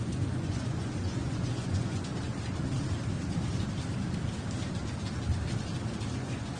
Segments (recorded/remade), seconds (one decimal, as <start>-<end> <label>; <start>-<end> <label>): 0.0-2.1 remade; 2.1-6.1 recorded; 6.1-6.6 remade